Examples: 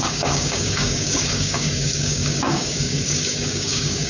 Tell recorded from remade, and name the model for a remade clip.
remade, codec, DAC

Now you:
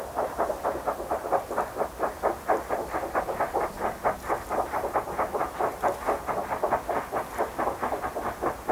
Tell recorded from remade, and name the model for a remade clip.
recorded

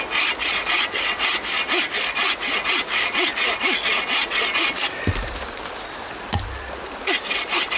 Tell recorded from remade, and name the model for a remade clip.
recorded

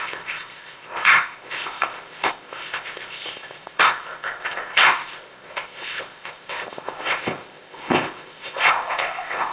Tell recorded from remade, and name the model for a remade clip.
remade, codec, ZipCodec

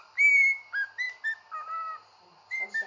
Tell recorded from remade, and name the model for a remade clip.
recorded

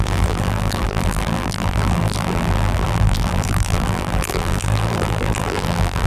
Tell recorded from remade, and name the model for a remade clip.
remade, vocoder, BigVGAN v2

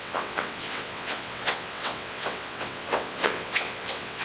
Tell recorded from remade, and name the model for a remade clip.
remade, vocoder, WaveNeXt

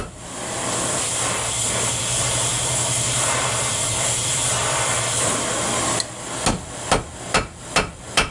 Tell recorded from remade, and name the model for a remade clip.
remade, vocoder, BigVGAN v2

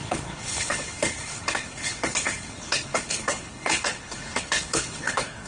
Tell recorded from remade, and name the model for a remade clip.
remade, codec, HILCodec